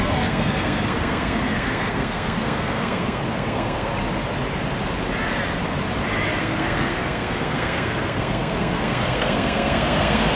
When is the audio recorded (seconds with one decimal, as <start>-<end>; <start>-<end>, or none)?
3.9-6.4